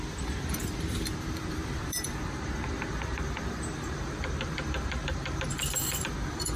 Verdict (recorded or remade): remade